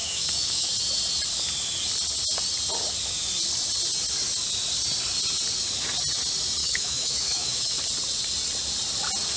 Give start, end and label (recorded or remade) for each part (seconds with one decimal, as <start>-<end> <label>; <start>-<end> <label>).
0.0-0.7 remade; 0.7-6.6 recorded; 6.6-7.7 remade; 7.7-9.4 recorded